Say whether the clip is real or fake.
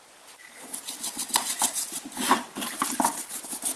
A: real